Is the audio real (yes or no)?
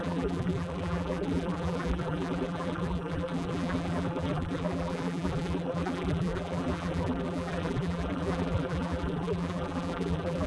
no